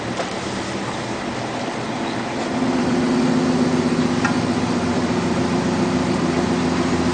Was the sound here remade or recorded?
recorded